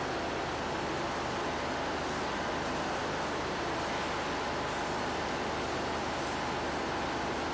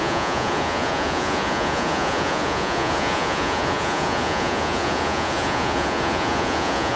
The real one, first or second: first